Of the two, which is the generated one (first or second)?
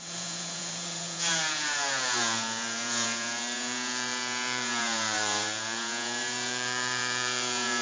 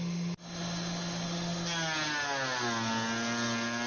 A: first